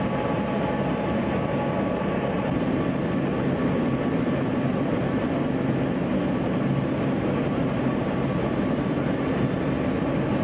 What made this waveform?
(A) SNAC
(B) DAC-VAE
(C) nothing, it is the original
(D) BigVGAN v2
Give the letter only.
C